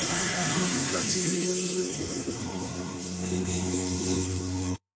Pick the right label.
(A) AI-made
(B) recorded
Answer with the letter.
A